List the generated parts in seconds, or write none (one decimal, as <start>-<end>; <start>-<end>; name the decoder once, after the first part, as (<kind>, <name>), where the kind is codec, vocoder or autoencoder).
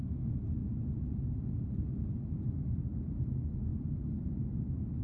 none